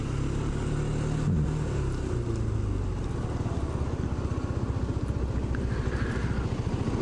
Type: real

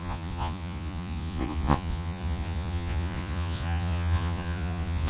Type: fake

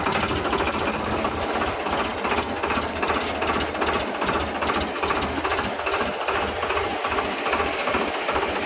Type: real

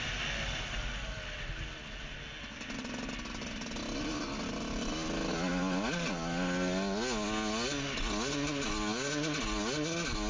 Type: real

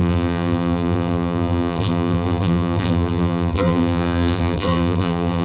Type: fake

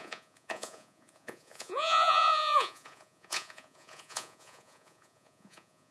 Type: fake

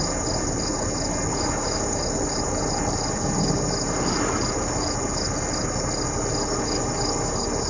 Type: real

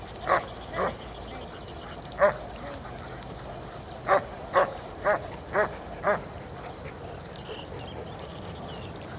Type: real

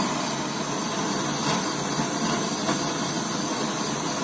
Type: real